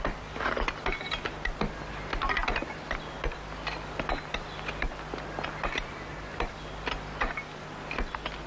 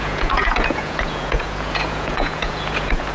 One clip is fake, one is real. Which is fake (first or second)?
second